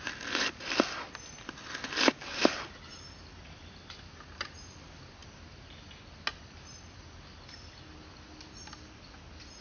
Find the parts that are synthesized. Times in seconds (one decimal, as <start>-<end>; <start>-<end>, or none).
none